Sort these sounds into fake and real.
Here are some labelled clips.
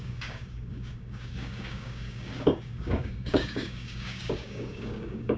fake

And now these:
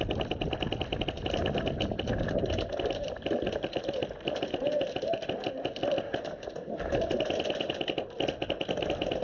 real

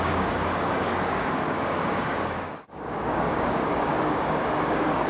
fake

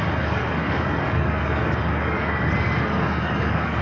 fake